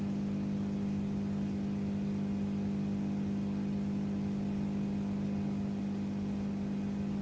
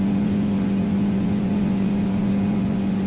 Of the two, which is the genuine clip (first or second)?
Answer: first